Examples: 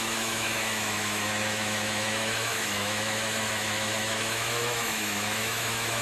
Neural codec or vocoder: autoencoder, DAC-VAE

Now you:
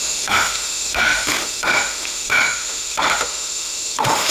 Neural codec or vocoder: autoencoder, DAC-VAE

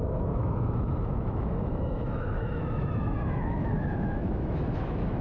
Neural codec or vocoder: autoencoder, DAC-VAE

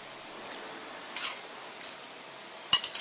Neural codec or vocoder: none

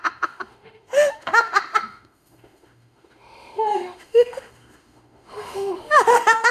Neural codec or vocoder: autoencoder, DAC-VAE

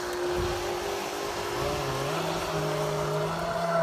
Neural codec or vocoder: none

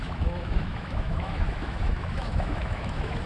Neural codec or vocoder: autoencoder, DAC-VAE